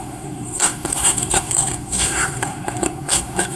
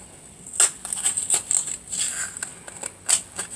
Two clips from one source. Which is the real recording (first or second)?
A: second